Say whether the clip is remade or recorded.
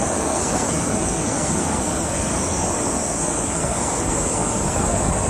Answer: remade